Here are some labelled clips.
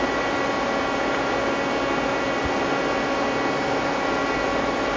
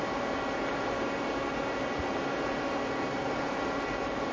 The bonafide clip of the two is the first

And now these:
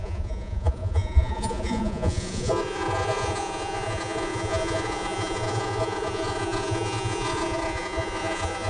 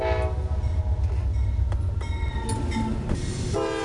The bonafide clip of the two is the second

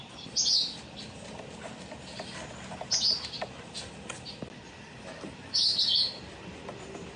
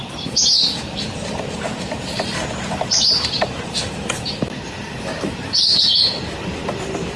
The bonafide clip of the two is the first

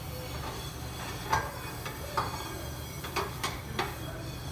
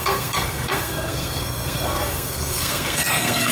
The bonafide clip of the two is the first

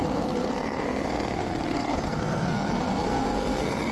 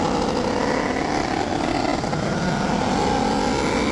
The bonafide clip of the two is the second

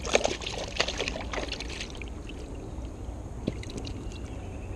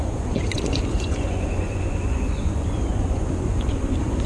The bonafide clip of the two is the first